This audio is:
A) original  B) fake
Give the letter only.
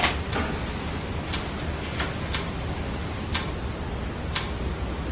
A